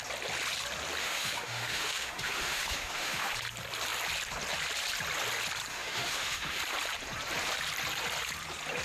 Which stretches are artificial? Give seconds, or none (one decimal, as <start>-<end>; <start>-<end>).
1.0-3.3; 5.7-6.6